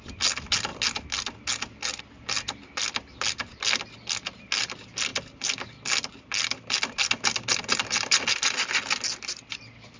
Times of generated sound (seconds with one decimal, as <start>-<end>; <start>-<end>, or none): none